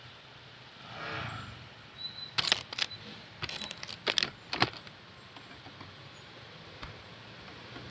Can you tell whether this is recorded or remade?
recorded